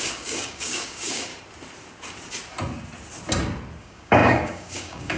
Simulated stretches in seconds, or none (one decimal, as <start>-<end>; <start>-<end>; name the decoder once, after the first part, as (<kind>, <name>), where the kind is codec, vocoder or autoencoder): 0.0-1.3 (codec, DAC); 3.8-5.2